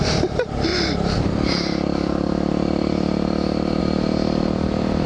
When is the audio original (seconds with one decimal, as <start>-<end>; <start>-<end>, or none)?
0.7-3.8